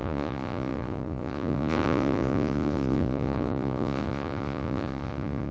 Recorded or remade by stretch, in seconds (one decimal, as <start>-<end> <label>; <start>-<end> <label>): 0.0-5.5 remade